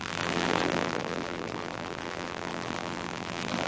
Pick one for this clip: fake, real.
fake